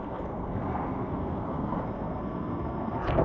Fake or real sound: fake